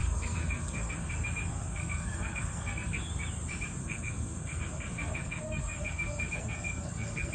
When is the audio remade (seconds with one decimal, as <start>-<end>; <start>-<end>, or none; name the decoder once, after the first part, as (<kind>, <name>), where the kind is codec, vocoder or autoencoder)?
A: 0.0-1.1 (codec, SNAC); 1.5-3.0; 3.8-7.3